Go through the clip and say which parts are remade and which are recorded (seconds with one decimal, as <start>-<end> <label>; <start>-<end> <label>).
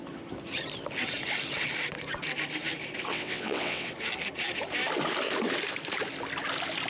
0.0-3.1 recorded; 3.1-3.9 remade; 3.9-6.9 recorded